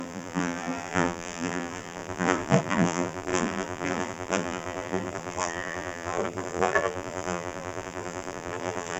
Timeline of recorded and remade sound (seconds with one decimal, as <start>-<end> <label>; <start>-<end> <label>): 0.0-9.0 remade